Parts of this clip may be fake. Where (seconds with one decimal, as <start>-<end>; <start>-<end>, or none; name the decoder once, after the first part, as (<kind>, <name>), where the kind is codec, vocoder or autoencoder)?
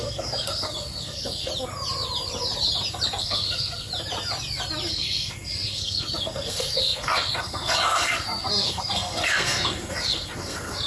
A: 0.0-1.5 (codec, SNAC); 3.2-3.9; 4.9-10.9